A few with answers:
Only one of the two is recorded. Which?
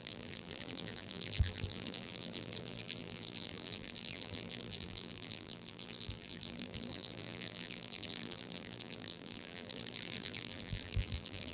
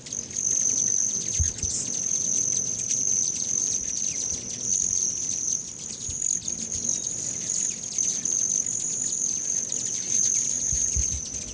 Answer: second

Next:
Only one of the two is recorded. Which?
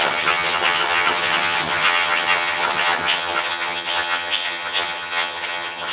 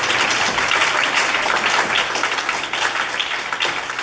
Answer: second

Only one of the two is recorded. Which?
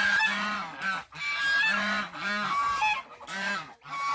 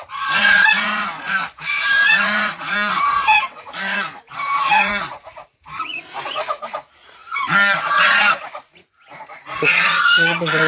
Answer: first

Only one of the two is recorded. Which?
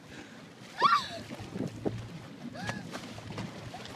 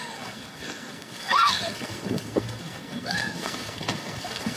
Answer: first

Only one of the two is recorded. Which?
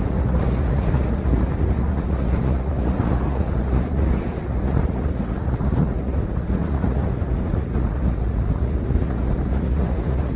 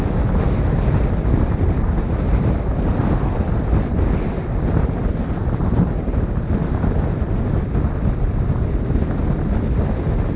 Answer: second